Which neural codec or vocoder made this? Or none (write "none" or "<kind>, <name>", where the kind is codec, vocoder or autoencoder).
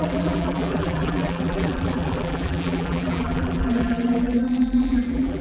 vocoder, BigVGAN v2